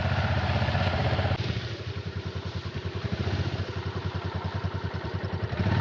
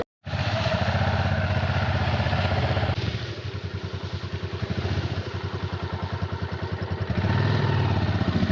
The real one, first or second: second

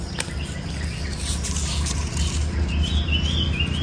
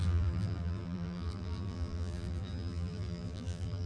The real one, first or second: first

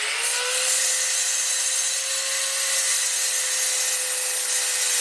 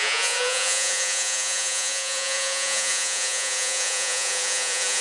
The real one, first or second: first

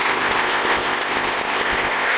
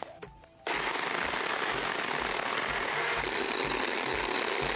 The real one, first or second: second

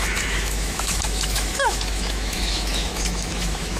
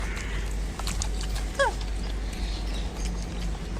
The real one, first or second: second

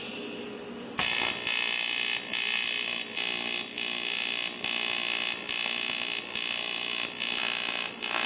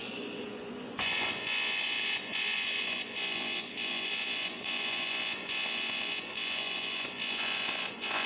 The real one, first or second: first